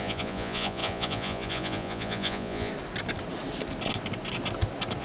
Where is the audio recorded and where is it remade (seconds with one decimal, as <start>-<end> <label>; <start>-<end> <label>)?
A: 0.0-2.7 remade; 2.7-5.0 recorded